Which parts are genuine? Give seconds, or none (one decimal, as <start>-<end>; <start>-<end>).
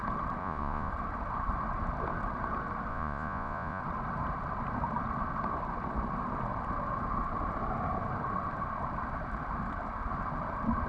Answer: 0.0-0.4; 0.9-2.9; 3.8-10.9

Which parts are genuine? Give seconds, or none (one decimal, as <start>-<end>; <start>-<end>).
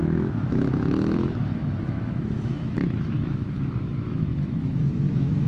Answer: none